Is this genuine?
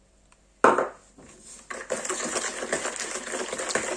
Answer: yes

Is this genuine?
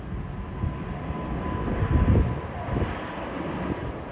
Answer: yes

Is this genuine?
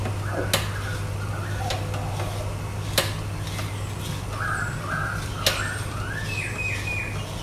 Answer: yes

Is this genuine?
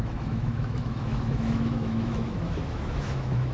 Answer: no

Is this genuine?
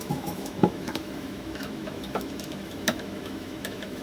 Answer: no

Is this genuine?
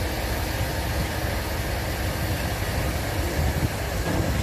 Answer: yes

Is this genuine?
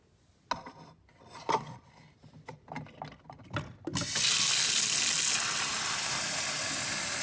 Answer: yes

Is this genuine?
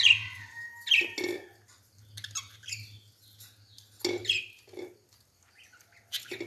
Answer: yes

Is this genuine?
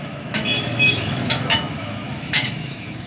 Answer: no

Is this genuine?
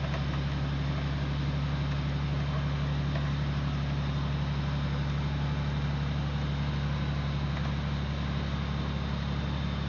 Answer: yes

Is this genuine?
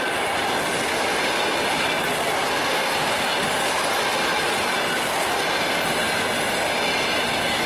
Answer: yes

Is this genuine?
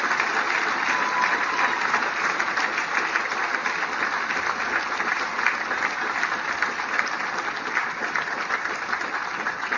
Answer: yes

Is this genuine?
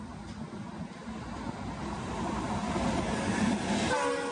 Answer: yes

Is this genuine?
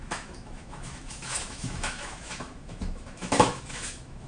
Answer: no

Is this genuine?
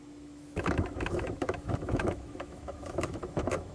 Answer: no